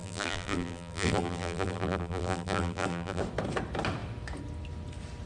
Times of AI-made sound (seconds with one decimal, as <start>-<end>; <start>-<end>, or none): 0.0-3.2